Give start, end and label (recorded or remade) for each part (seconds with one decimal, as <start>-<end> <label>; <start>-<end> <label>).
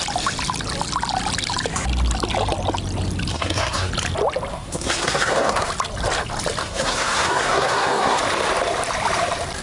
0.0-3.3 recorded; 3.3-3.9 remade; 3.9-4.5 recorded; 4.5-5.7 remade; 5.7-6.6 recorded; 6.6-8.2 remade; 8.2-9.6 recorded